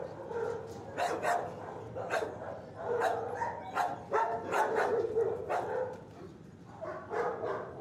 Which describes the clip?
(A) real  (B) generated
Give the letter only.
A